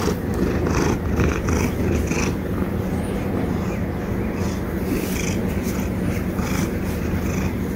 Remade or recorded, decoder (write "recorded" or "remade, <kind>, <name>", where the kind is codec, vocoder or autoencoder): remade, vocoder, BigVGAN v2